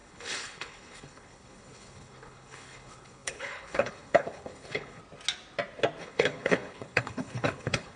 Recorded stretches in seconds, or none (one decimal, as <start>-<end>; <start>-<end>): 5.0-6.0